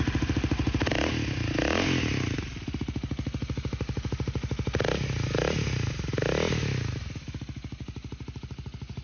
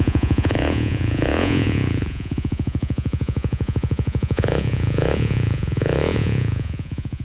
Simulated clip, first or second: second